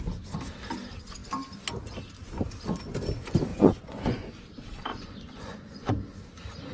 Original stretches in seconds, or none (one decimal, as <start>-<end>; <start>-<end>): 0.0-3.5; 4.3-4.9; 5.9-6.7